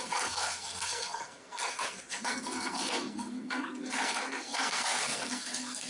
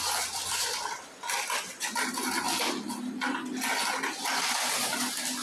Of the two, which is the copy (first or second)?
first